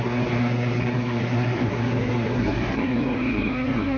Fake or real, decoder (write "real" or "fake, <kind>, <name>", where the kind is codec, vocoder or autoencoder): fake, codec, SNAC